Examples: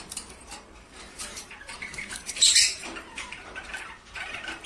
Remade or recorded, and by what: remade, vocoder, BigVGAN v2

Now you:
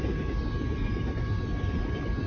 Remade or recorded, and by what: recorded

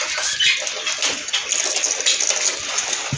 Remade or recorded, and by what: recorded